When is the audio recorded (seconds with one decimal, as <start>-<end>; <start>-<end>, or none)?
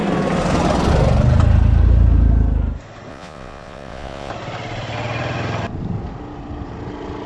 0.0-3.1; 4.3-7.3